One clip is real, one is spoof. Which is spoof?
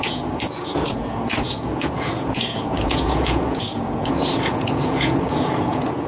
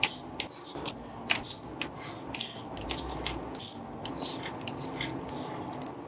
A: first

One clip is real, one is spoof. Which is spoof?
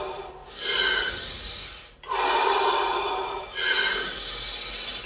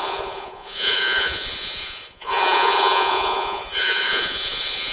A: second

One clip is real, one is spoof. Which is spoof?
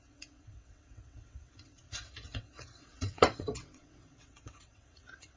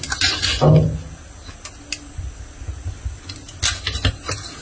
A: first